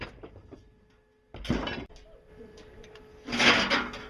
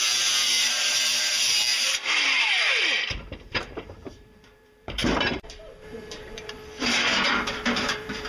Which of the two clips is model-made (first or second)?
second